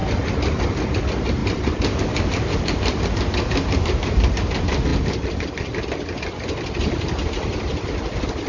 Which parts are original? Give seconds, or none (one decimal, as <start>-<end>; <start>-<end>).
0.0-1.4; 4.4-8.5